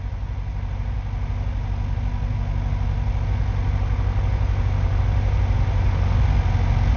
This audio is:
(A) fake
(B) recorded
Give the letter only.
B